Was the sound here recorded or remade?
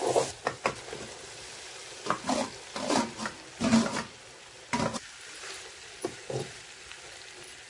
recorded